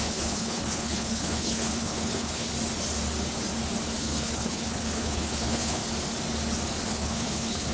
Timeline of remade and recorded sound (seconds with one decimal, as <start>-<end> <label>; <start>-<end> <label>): 0.0-2.5 remade; 2.5-4.0 recorded; 4.0-5.8 remade; 5.8-6.9 recorded; 6.9-7.7 remade